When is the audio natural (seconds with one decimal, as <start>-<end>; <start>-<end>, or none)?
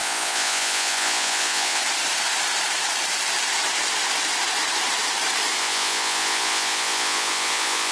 1.8-5.6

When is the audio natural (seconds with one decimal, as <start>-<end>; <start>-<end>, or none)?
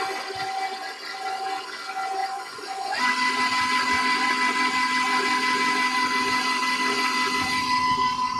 0.0-2.2; 3.0-8.4